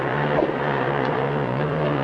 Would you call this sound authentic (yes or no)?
no